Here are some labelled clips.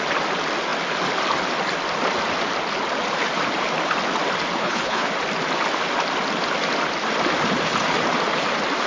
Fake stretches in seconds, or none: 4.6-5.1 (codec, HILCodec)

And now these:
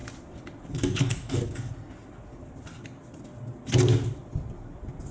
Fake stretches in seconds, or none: 0.7-1.7 (codec, DAC)

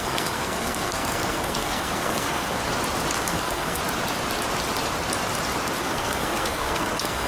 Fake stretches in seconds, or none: 0.0-2.6 (codec, SNAC); 3.2-3.8; 5.8-7.3